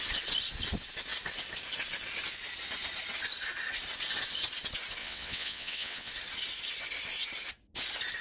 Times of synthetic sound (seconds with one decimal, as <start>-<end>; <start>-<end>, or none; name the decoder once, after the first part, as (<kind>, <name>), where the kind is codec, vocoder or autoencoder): 5.0-6.1 (vocoder, WaveNeXt)